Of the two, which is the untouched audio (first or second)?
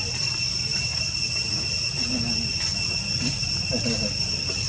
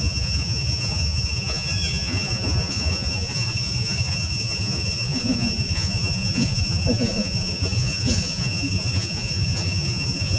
first